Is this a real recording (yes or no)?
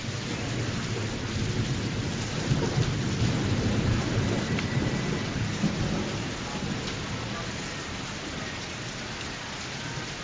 yes